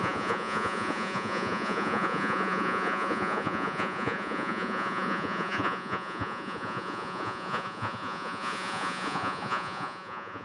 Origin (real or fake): fake